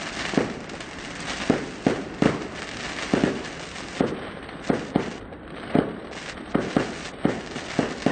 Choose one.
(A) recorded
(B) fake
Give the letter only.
A